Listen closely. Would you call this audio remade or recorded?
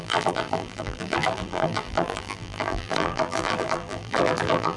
remade